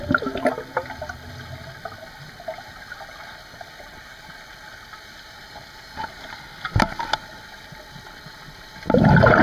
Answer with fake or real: real